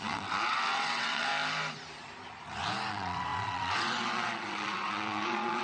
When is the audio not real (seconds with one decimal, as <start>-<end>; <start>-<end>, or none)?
0.0-1.3; 2.9-5.6

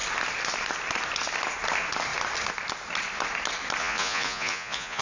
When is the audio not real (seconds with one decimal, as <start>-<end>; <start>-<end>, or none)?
3.8-5.0

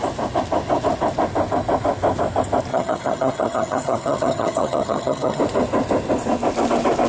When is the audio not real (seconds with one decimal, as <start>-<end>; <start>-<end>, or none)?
2.7-5.4

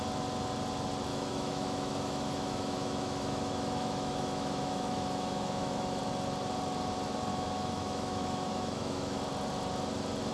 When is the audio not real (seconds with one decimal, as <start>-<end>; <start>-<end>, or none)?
1.1-6.0; 7.3-9.2

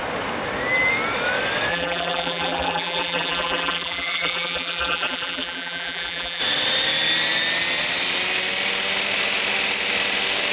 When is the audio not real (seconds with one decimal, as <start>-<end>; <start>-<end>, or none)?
1.7-6.4

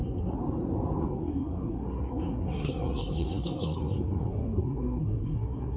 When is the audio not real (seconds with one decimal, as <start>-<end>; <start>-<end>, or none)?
0.0-0.4; 1.0-5.8

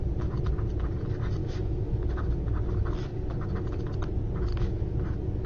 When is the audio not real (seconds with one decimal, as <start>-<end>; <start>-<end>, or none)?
1.4-2.2; 4.5-5.0

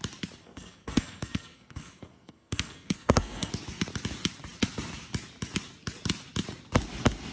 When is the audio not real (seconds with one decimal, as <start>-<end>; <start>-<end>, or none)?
0.4-3.5